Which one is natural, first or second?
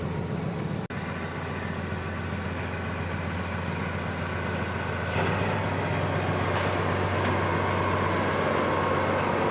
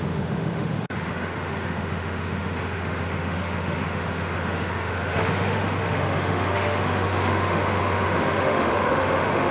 first